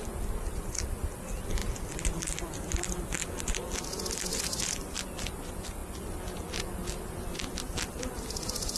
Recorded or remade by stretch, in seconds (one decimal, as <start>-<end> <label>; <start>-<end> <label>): 0.0-8.8 recorded